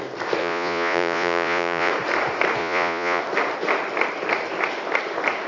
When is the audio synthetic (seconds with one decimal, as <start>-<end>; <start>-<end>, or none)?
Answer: 0.4-1.9; 2.6-3.2